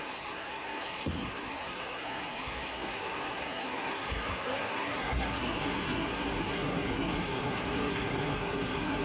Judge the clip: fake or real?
fake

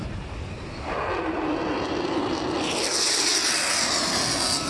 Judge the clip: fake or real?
real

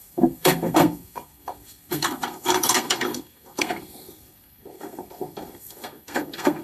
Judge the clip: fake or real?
fake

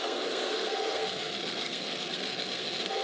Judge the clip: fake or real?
fake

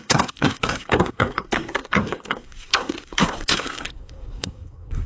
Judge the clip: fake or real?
fake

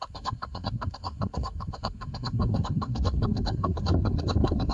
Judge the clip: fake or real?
fake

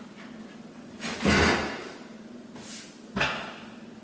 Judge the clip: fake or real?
real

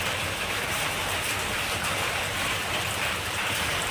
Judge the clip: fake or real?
real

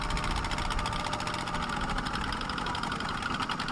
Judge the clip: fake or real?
real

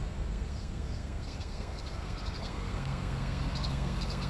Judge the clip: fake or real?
fake